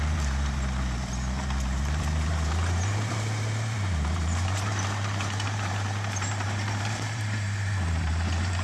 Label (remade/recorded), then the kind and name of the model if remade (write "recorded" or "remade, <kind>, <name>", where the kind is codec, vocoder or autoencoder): remade, vocoder, BigVGAN v2